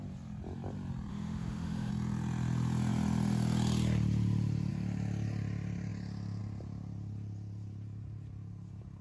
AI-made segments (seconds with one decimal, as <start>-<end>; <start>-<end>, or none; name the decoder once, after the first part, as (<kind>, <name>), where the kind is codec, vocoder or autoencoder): 1.1-1.9 (autoencoder, DAC-VAE)

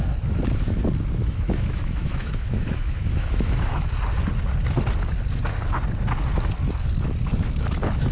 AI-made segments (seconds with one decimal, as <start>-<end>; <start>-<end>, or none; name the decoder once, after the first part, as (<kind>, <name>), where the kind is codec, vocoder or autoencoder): 1.2-3.9 (autoencoder, DAC-VAE)

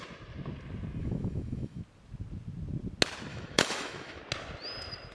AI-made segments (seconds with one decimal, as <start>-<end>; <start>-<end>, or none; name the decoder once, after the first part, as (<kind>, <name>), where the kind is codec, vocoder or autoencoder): 1.0-1.8 (autoencoder, DAC-VAE); 3.3-4.2

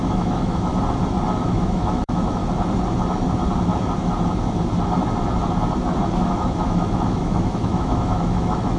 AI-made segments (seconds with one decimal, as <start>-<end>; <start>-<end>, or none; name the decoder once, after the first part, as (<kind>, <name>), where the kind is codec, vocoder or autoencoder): 0.0-0.7 (autoencoder, DAC-VAE); 1.4-2.4; 6.2-8.8

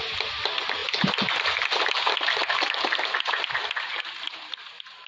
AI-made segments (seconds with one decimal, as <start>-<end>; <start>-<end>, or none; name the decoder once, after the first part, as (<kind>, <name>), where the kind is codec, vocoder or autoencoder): none

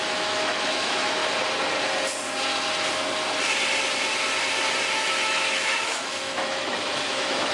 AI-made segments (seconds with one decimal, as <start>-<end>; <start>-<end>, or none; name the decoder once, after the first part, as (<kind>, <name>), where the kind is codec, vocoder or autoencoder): 0.0-1.2 (autoencoder, DAC-VAE); 4.9-7.5

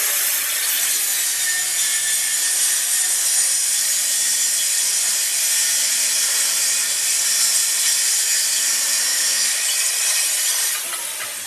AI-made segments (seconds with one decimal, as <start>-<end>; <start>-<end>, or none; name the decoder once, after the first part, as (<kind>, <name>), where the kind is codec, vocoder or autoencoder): 9.1-9.7 (autoencoder, DAC-VAE)

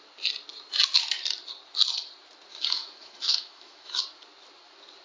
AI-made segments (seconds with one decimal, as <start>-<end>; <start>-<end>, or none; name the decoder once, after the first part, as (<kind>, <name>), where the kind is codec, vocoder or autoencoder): 2.5-4.0 (autoencoder, DAC-VAE)